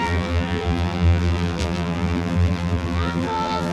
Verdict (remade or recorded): remade